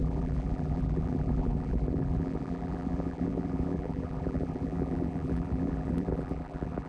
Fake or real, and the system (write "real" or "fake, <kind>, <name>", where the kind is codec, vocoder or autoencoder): fake, vocoder, BigVGAN v2